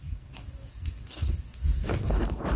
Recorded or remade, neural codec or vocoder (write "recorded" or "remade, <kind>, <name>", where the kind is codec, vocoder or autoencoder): remade, codec, SNAC